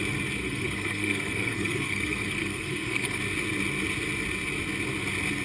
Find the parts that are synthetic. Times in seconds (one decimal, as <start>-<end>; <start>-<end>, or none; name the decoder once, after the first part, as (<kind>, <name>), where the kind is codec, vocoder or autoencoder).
0.4-3.2 (codec, SNAC)